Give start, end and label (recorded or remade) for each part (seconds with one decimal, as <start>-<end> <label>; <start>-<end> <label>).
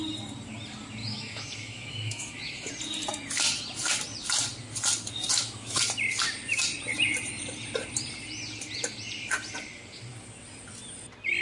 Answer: 0.0-1.0 recorded; 1.0-2.7 remade; 2.7-5.3 recorded; 5.3-5.8 remade; 5.8-11.4 recorded